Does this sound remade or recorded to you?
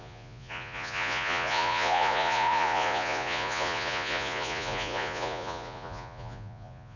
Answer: remade